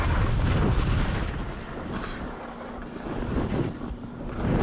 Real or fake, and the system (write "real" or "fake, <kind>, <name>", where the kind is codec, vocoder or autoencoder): real